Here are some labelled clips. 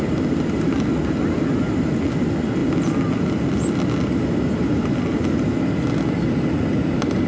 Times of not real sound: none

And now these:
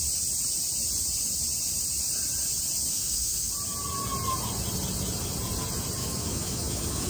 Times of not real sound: 2.9-3.5; 6.0-7.1